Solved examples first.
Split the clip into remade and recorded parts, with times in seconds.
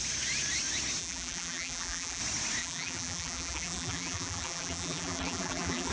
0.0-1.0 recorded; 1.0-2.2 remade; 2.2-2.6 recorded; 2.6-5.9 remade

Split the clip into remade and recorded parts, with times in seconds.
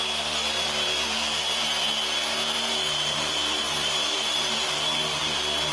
0.0-0.4 recorded; 0.4-1.4 remade; 1.4-2.3 recorded; 2.3-5.2 remade; 5.2-5.7 recorded